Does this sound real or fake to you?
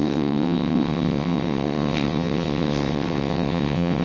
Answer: fake